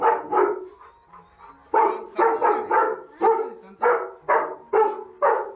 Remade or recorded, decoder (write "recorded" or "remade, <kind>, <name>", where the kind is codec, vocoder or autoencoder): recorded